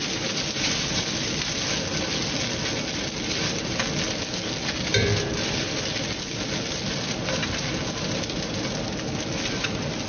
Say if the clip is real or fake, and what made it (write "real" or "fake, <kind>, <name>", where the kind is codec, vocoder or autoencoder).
real